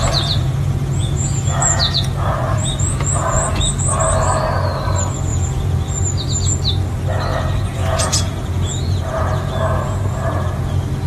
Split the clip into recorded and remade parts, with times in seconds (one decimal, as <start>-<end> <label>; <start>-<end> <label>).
0.0-3.7 remade; 3.7-5.3 recorded; 5.3-6.0 remade; 6.0-7.3 recorded; 7.3-10.7 remade; 10.7-11.1 recorded